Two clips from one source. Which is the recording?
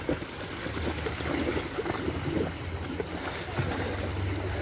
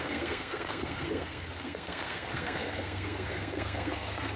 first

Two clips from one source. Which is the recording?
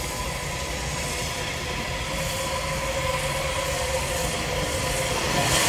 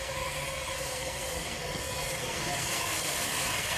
first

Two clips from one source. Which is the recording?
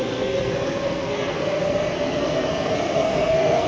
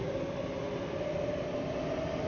second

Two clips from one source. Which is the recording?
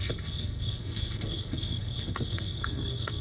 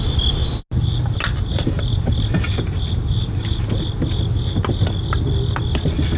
second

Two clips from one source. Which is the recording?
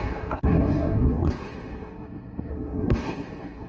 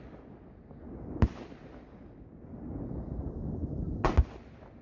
second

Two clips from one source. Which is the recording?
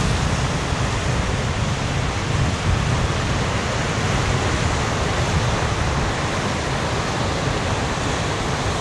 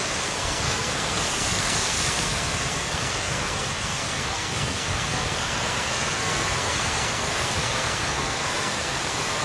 first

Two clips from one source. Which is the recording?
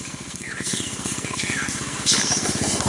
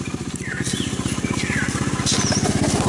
second